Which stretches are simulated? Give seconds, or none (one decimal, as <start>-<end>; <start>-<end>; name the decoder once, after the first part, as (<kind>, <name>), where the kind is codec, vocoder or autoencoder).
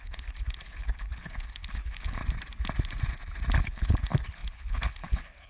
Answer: 0.0-2.2 (codec, HILCodec); 3.6-5.5